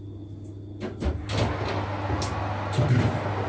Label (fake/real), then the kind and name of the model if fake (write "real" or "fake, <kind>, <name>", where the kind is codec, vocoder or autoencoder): real